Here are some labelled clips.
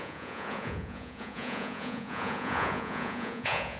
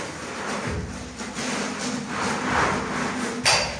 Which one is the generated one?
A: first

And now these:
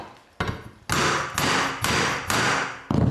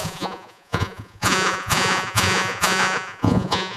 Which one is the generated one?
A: second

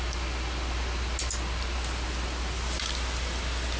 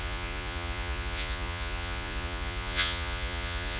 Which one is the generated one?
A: second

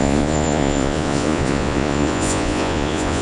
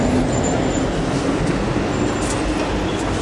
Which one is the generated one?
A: first